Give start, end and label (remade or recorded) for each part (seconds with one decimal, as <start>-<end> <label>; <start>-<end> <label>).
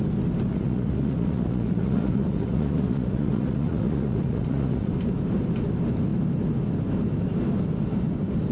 0.0-0.5 recorded; 0.5-4.9 remade; 4.9-8.5 recorded